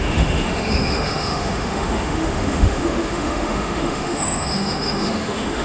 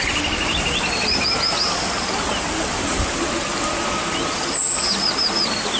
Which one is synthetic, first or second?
first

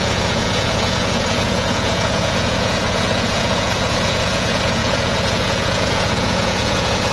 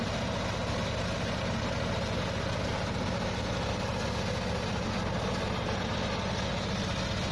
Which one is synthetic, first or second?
first